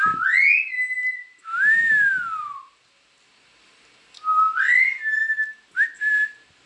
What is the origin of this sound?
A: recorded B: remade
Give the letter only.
A